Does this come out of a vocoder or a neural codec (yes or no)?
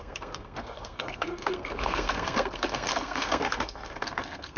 yes